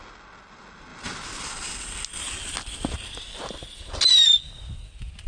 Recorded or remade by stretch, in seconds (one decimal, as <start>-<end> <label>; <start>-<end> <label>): 0.0-5.3 recorded